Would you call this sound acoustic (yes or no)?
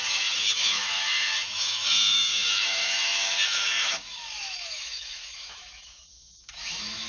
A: no